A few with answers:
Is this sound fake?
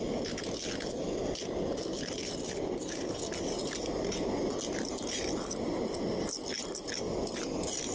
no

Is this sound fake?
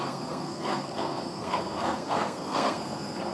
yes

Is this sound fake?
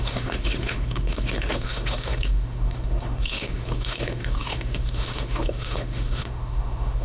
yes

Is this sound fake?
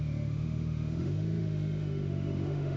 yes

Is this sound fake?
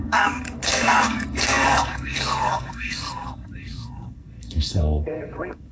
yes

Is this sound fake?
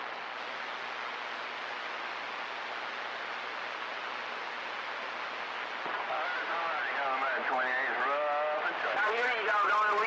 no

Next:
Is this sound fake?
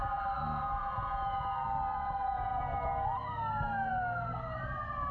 no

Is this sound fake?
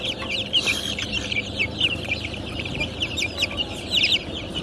yes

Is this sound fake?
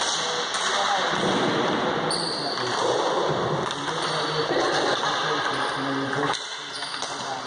no